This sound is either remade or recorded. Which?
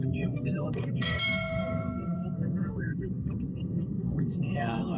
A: remade